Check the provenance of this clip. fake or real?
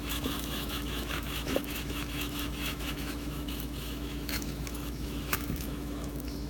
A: fake